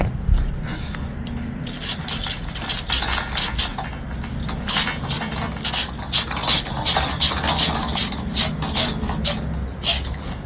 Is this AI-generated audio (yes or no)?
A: no